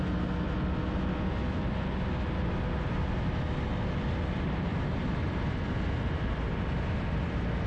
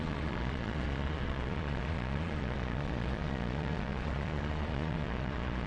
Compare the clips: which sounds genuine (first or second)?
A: first